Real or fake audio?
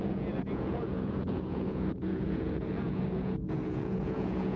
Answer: fake